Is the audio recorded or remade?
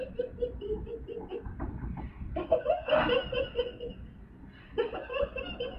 recorded